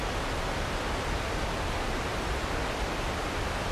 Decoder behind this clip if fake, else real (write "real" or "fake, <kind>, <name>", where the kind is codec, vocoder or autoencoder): real